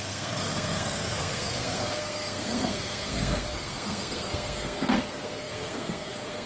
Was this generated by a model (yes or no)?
yes